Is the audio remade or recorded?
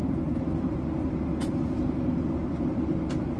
recorded